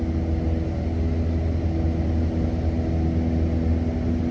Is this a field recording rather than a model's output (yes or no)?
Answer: yes